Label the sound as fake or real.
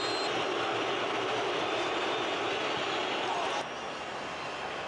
real